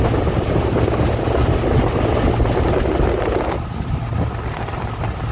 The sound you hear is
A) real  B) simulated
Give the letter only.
A